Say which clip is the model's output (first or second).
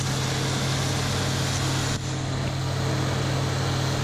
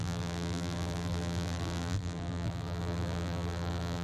second